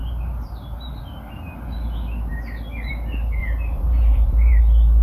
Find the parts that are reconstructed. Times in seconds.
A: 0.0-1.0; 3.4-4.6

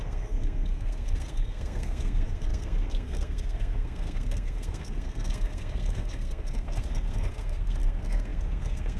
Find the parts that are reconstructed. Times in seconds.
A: 0.0-9.0

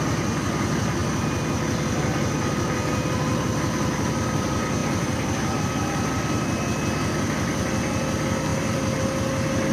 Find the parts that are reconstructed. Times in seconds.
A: 4.8-5.6; 8.5-9.0

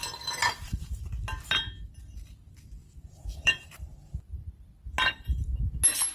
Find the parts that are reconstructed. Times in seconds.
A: 0.0-1.0; 2.8-4.2

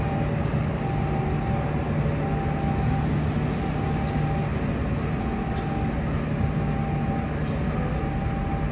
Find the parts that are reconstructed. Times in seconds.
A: 4.5-5.2

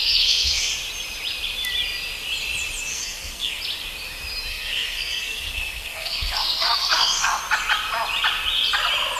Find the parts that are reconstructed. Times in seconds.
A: 0.0-0.7; 2.9-3.6; 4.5-7.4

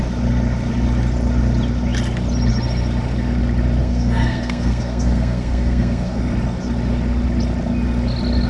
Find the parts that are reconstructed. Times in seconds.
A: 3.8-6.2

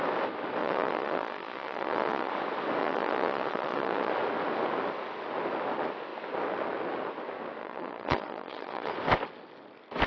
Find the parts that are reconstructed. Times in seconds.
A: 0.6-2.3; 2.8-4.1; 7.6-8.9